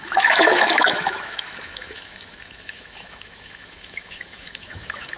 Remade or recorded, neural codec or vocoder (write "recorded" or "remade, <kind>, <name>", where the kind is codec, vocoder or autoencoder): remade, autoencoder, DAC-VAE